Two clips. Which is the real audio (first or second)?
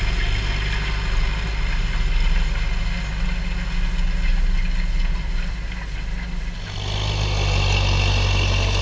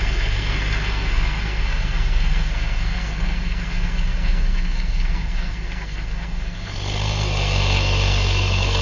first